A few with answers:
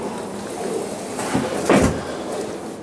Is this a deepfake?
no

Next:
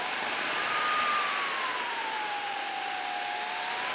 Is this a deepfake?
no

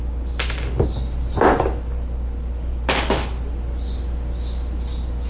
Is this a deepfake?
no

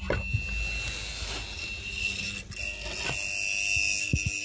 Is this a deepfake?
no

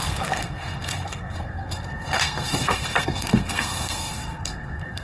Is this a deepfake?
yes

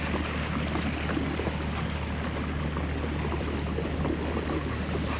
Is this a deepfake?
no